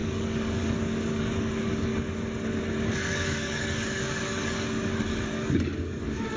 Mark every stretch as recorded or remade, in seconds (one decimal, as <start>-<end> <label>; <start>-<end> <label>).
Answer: 0.0-1.9 remade; 1.9-2.8 recorded; 2.8-6.4 remade